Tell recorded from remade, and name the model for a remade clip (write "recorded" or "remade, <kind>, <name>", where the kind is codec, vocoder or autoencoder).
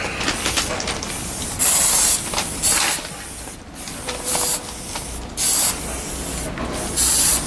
recorded